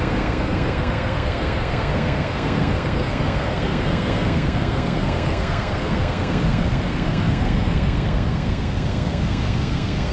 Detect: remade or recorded remade